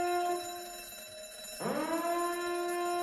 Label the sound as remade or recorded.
recorded